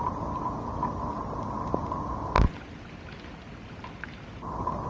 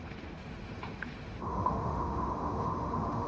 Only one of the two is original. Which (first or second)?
first